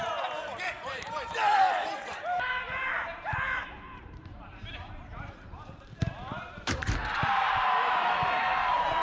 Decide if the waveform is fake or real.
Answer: fake